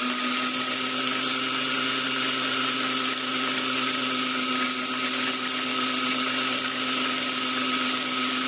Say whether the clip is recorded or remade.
recorded